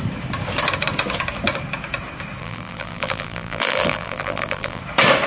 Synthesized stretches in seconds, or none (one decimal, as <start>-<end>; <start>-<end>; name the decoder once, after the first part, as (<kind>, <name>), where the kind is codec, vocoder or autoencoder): 2.4-4.8 (vocoder, BigVGAN v2)